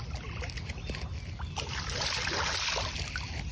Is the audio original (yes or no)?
yes